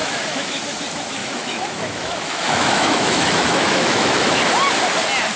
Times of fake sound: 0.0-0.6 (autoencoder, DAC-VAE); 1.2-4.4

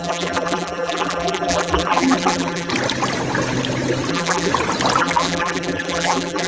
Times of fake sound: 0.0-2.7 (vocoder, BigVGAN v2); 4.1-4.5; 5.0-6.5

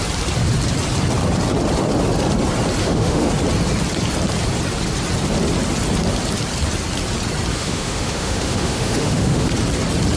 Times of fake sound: 2.8-3.3 (autoencoder, DAC-VAE); 7.5-9.5

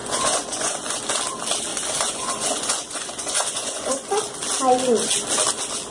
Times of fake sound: 0.0-1.0 (vocoder, Vocos); 1.7-4.2

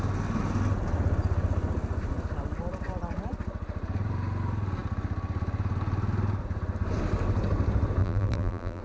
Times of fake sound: 8.0-8.8 (vocoder, BigVGAN v2)